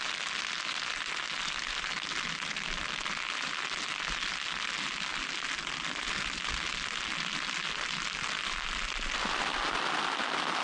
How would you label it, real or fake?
real